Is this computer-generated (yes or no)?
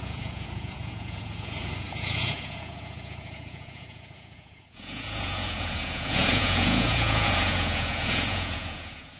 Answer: yes